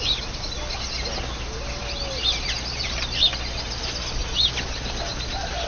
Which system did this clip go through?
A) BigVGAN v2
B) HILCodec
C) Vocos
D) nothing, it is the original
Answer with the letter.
D